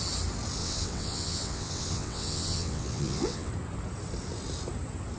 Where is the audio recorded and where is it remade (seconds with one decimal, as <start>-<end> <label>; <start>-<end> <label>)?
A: 0.0-0.6 recorded; 0.6-3.5 remade; 3.5-5.2 recorded